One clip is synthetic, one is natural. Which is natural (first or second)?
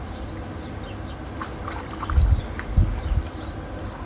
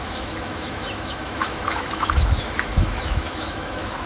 first